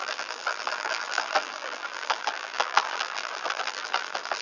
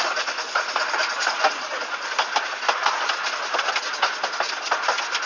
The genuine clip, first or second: second